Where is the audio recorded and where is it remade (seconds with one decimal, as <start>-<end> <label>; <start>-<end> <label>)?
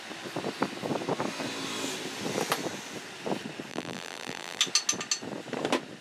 0.0-3.7 recorded; 3.7-4.6 remade; 4.6-6.0 recorded